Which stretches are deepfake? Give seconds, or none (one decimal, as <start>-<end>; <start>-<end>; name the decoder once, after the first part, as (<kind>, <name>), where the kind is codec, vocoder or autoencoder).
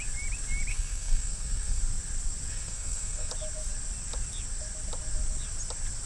0.7-1.8 (codec, SNAC); 2.5-3.3